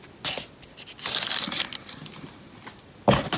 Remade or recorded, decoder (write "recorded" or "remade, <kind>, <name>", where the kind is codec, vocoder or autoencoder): recorded